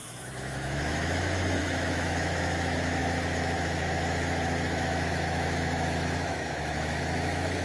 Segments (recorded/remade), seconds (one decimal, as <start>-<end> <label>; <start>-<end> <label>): 0.0-7.6 remade